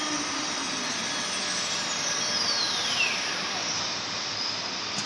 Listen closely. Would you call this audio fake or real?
real